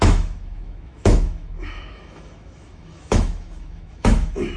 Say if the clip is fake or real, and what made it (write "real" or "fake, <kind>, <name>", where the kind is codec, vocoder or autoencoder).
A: fake, autoencoder, DAC-VAE